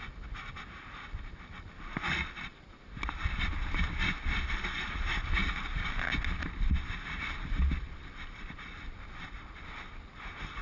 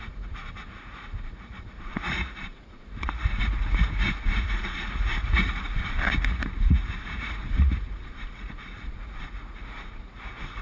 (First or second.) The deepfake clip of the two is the second